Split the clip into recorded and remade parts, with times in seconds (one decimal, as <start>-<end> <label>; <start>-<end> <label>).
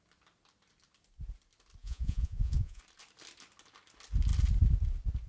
0.0-1.8 recorded; 1.8-2.8 remade; 2.8-5.3 recorded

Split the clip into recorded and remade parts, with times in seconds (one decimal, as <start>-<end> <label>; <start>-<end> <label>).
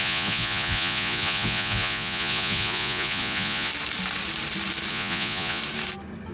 0.0-3.7 remade; 3.7-4.9 recorded; 4.9-5.6 remade; 5.6-6.3 recorded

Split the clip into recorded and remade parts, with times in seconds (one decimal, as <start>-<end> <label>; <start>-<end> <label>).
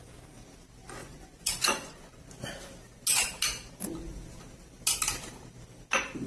0.0-1.0 recorded; 1.0-2.2 remade; 2.2-6.3 recorded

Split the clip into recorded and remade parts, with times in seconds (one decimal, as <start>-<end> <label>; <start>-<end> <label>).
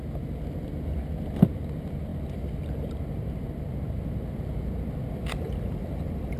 0.0-6.4 recorded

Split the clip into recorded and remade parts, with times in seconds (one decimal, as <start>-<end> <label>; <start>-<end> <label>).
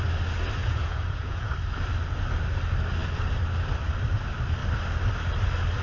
0.0-0.6 recorded; 0.6-1.5 remade; 1.5-5.8 recorded